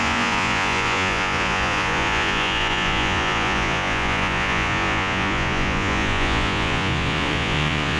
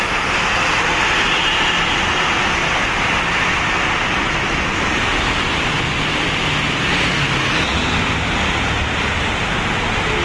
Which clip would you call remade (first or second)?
first